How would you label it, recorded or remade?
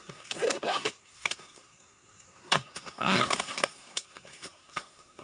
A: remade